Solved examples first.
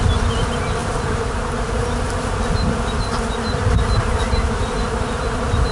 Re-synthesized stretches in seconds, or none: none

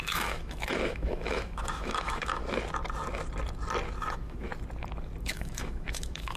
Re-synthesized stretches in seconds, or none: 0.0-2.4 (autoencoder, DAC-VAE); 4.1-4.5; 5.2-6.4

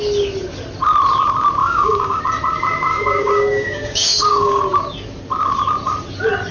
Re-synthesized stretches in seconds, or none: 1.6-2.2 (codec, DAC); 2.9-4.6

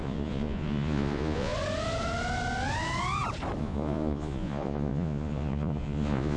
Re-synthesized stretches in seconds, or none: 0.0-1.5 (vocoder, Vocos); 3.6-6.4

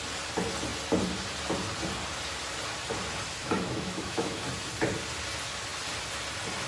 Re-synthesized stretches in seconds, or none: 3.4-4.4 (autoencoder, DAC-VAE)

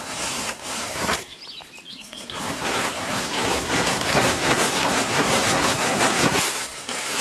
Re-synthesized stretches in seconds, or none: 0.0-1.4 (codec, SNAC); 1.9-7.2

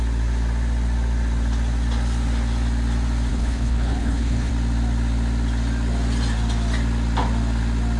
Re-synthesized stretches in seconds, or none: 3.3-4.5 (codec, HILCodec)